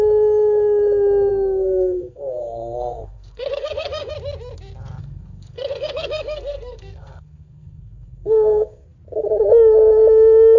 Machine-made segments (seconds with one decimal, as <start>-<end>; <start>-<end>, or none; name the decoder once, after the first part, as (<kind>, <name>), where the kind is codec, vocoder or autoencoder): 1.3-4.1 (codec, SNAC); 5.0-8.8